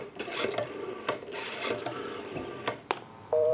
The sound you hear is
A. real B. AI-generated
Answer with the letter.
B